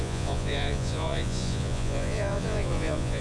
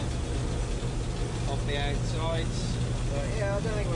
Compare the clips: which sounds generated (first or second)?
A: first